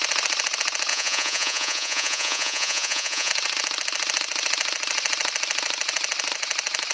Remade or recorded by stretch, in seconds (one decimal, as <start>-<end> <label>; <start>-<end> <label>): 0.0-0.9 recorded; 0.9-3.3 remade; 3.3-6.9 recorded